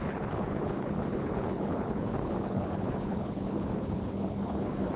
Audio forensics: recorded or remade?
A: remade